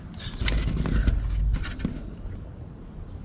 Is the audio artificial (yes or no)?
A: no